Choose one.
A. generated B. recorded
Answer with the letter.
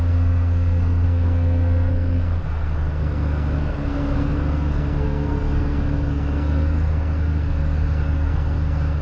A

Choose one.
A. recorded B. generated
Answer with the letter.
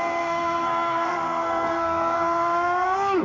B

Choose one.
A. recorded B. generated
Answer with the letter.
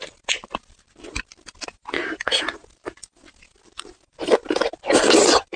A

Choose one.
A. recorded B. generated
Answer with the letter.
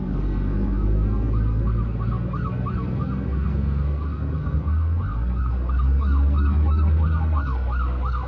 B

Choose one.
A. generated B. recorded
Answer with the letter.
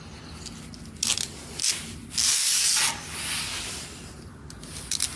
B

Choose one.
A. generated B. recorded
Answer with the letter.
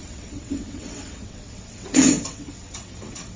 A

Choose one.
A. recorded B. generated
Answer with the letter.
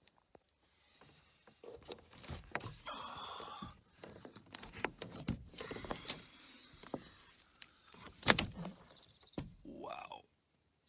B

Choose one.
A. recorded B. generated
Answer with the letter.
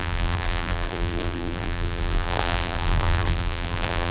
B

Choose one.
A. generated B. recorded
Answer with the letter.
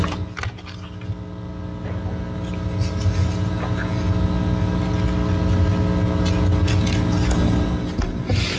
B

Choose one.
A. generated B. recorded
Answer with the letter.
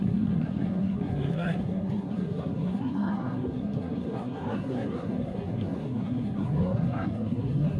A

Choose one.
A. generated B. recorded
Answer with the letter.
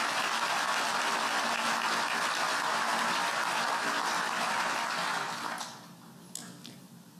B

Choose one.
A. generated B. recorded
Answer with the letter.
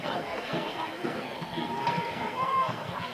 A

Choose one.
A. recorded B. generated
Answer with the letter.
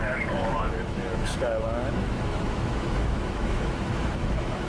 B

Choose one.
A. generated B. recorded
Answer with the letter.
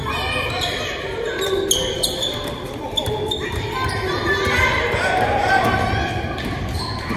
B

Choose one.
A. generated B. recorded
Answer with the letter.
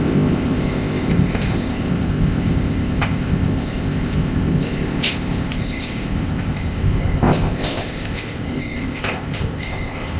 A